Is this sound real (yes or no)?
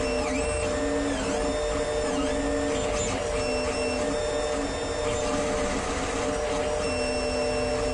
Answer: yes